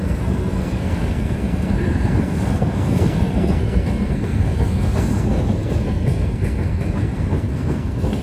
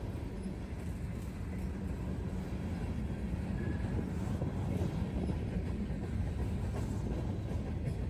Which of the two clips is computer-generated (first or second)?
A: first